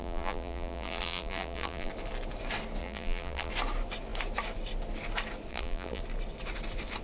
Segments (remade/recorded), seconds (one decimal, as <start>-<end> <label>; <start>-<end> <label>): 0.0-1.9 remade; 1.9-2.8 recorded; 2.8-3.5 remade; 3.5-5.5 recorded; 5.5-6.0 remade; 6.0-7.0 recorded